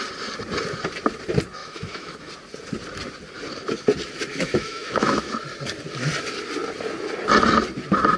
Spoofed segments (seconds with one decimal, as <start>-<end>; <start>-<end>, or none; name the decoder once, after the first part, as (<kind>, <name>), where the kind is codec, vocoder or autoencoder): 1.6-2.3 (autoencoder, DAC-VAE); 4.3-5.3